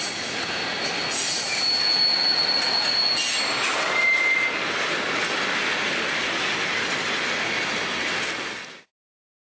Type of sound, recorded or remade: recorded